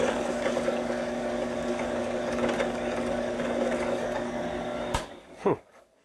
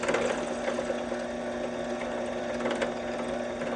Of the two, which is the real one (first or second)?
second